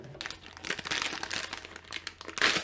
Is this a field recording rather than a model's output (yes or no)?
yes